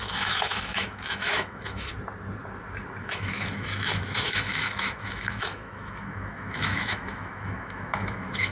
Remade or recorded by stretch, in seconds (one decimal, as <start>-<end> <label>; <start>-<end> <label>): 0.0-1.9 remade; 1.9-3.0 recorded; 3.0-8.5 remade